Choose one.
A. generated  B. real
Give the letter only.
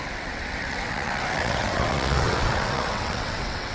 A